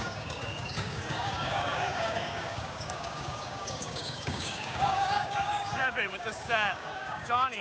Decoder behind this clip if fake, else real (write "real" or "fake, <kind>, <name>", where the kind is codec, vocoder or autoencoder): fake, codec, DAC